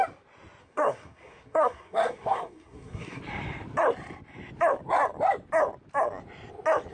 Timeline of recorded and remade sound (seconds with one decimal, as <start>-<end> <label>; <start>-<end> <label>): 0.0-0.6 recorded; 0.6-3.2 remade; 3.2-6.9 recorded